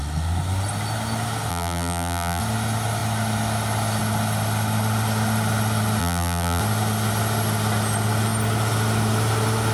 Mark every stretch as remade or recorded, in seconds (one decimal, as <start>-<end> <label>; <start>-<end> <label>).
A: 0.0-1.5 recorded; 1.5-2.4 remade; 2.4-6.0 recorded; 6.0-6.6 remade; 6.6-9.7 recorded